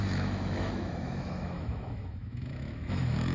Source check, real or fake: fake